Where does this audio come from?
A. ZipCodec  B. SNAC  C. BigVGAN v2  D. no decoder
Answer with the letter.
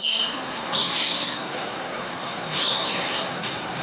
B